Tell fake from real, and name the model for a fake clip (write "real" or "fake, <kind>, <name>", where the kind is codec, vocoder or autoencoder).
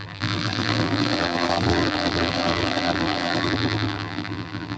fake, vocoder, BigVGAN v2